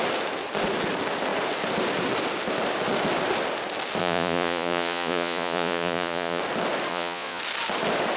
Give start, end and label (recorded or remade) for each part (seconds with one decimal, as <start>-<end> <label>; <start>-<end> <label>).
0.0-4.0 recorded; 4.0-6.4 remade; 6.4-6.9 recorded; 6.9-7.4 remade; 7.4-8.2 recorded